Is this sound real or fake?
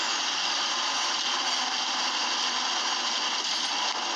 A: real